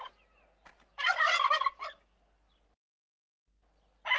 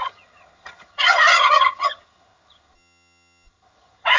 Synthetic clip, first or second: second